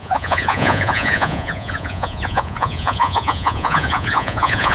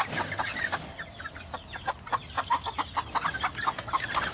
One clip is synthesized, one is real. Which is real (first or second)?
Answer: second